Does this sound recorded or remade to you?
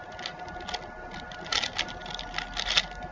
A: recorded